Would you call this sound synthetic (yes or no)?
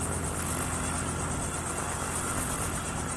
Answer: no